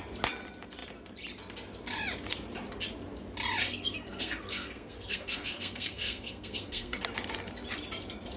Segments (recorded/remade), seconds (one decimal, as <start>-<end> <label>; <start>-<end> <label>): 0.0-3.6 recorded; 3.6-7.0 remade; 7.0-8.4 recorded